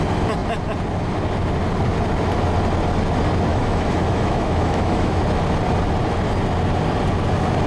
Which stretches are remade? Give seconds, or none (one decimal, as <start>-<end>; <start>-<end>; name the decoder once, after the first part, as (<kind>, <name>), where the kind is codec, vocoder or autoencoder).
3.5-5.2 (autoencoder, DAC-VAE)